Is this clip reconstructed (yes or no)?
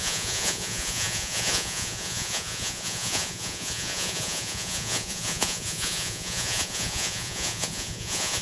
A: yes